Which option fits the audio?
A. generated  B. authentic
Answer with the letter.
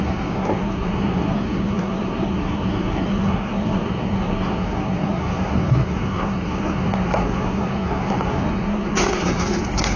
A